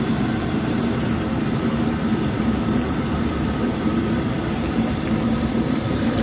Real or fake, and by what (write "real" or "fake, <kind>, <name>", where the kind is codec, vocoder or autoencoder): fake, vocoder, BigVGAN v2